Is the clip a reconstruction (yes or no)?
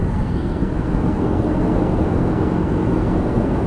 yes